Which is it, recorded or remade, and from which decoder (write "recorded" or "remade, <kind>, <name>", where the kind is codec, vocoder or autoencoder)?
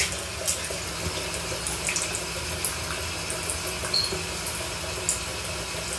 recorded